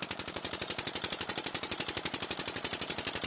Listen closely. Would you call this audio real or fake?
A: real